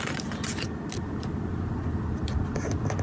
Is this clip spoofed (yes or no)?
no